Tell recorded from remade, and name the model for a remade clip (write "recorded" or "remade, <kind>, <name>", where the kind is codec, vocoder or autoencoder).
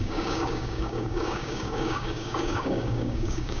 remade, codec, DAC